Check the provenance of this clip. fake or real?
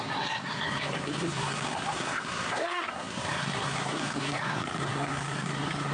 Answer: fake